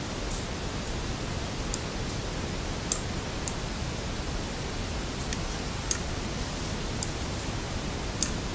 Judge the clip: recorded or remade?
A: recorded